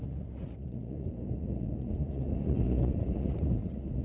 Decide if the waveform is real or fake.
fake